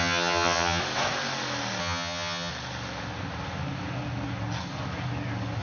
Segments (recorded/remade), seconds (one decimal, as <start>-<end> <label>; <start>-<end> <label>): 0.0-0.8 remade; 0.8-1.8 recorded; 1.8-2.5 remade; 2.5-5.6 recorded